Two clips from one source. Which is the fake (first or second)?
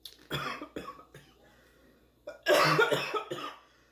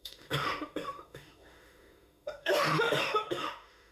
second